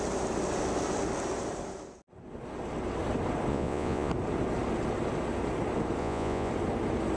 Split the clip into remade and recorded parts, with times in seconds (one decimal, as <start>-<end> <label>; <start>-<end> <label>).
0.0-3.5 recorded; 3.5-4.1 remade; 4.1-6.0 recorded; 6.0-6.5 remade; 6.5-7.2 recorded